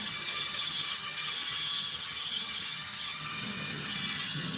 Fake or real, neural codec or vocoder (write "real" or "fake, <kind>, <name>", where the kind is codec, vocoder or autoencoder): fake, vocoder, HiFi-GAN